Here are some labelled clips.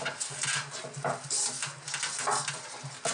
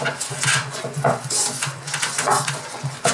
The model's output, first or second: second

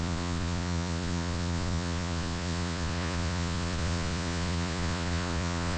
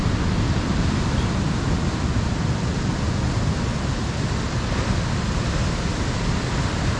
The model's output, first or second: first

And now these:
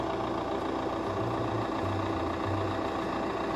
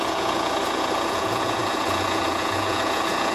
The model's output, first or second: second